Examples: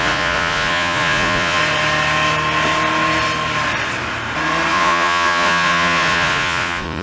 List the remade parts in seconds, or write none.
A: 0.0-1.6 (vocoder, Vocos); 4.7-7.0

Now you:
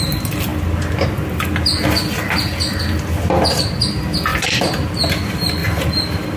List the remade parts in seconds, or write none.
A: 4.3-4.9 (vocoder, BigVGAN v2); 5.6-6.4

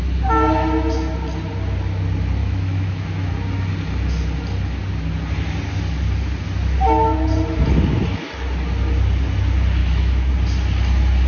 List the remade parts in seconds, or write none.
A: 2.4-3.3 (autoencoder, DAC-VAE); 9.8-10.3

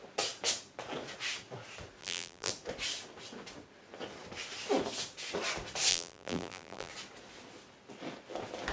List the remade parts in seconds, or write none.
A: 2.0-2.5 (vocoder, BigVGAN v2); 5.9-6.9

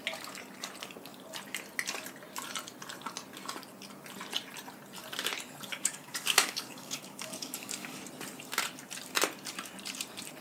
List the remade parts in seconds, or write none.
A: 5.7-8.0 (codec, DAC)

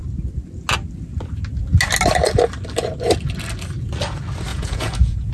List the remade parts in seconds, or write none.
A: 4.5-5.3 (vocoder, Vocos)

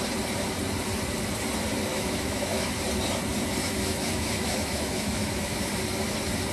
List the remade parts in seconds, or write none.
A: 1.9-2.7 (autoencoder, DAC-VAE); 3.6-5.6